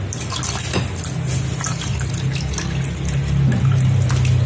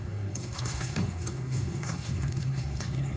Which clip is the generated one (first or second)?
second